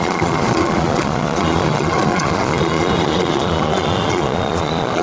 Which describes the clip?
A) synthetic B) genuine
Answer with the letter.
A